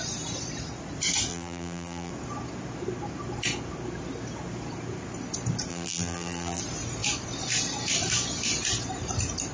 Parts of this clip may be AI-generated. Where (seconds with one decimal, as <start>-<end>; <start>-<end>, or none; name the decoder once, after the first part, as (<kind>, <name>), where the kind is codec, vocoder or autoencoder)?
1.3-2.1 (vocoder, BigVGAN v2); 5.7-6.6